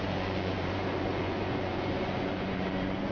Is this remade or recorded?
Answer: remade